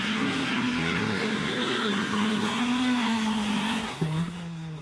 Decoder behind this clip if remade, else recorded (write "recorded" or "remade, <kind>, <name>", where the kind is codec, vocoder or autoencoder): remade, codec, SNAC